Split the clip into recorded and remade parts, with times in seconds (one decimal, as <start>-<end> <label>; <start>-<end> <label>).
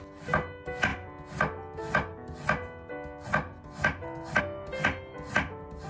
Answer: 0.0-5.9 recorded